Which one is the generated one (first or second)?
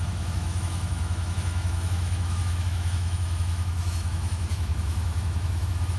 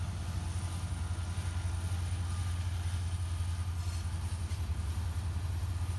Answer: first